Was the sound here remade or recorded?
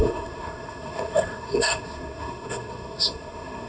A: remade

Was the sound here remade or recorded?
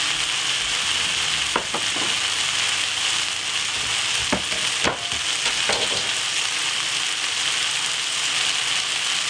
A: recorded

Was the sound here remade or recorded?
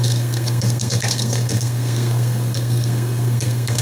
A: remade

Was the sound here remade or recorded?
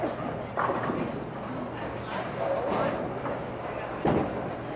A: recorded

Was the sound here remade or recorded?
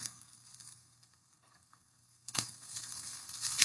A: remade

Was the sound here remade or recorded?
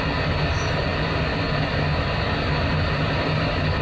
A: recorded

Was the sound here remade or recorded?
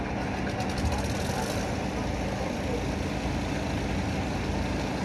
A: recorded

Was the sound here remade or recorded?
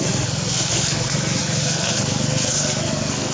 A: remade